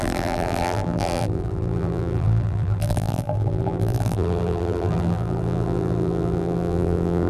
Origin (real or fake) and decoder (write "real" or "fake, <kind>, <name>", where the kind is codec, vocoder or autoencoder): fake, vocoder, BigVGAN v2